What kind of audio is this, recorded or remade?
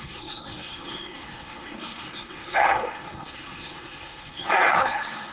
remade